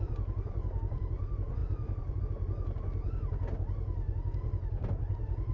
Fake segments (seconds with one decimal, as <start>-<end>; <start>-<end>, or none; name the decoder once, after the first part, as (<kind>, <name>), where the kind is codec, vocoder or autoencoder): none